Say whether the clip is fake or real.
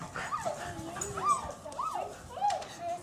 real